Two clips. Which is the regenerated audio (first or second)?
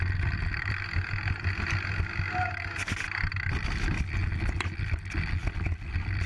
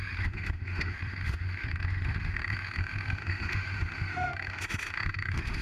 second